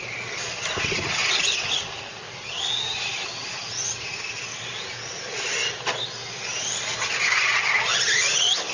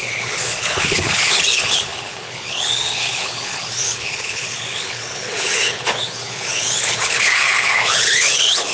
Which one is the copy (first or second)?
second